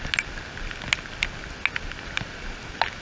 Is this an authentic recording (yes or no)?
yes